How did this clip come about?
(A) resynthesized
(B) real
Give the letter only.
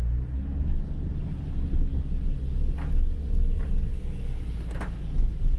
B